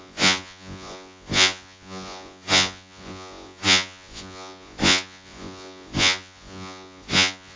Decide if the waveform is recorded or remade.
remade